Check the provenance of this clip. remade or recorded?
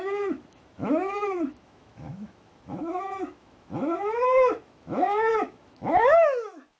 remade